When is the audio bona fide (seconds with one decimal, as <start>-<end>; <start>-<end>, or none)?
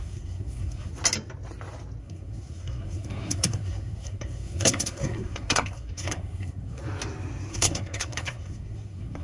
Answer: 0.9-2.0; 6.8-7.5